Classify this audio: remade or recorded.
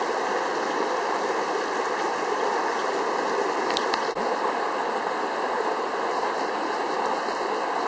recorded